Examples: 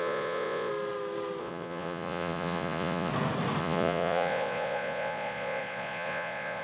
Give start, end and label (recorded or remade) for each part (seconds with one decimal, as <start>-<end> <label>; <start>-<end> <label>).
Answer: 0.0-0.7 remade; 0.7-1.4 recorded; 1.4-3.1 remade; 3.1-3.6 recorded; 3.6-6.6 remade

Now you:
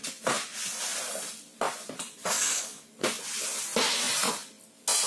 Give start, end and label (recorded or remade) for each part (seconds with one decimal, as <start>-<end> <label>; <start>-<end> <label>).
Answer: 0.0-2.2 recorded; 2.2-2.9 remade; 2.9-5.1 recorded

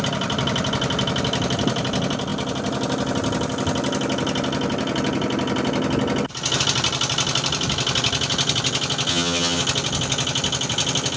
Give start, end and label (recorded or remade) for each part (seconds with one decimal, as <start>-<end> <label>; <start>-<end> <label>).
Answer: 0.0-9.1 recorded; 9.1-9.6 remade; 9.6-11.2 recorded

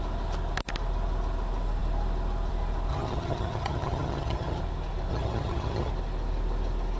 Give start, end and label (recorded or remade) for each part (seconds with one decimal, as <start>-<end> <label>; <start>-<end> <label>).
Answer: 0.0-2.9 recorded; 2.9-4.6 remade; 4.6-5.1 recorded; 5.1-5.9 remade; 5.9-7.0 recorded

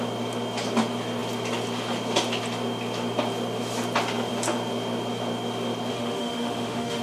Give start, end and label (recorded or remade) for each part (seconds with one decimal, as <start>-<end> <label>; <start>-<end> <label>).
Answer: 0.0-5.9 recorded; 5.9-7.0 remade